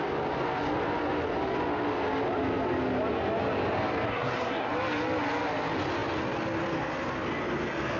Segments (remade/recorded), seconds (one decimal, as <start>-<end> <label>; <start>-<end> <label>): 0.0-4.1 recorded; 4.1-4.7 remade; 4.7-8.0 recorded